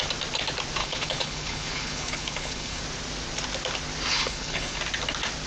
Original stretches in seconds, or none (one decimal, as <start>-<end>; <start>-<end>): 0.0-0.8; 2.8-4.1; 4.8-5.5